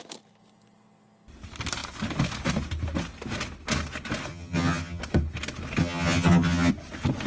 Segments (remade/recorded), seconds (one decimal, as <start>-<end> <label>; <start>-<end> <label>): 0.0-4.3 recorded; 4.3-5.0 remade; 5.0-5.8 recorded; 5.8-6.7 remade; 6.7-7.3 recorded